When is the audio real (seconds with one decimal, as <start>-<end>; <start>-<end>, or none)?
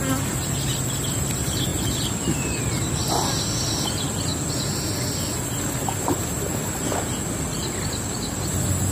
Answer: 0.0-1.7; 2.6-4.3; 5.9-8.9